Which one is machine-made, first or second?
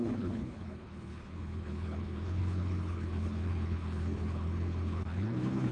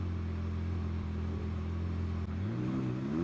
first